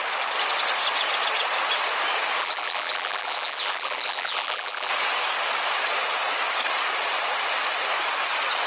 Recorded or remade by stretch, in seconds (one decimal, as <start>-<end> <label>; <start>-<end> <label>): 0.0-2.4 recorded; 2.4-4.9 remade; 4.9-8.7 recorded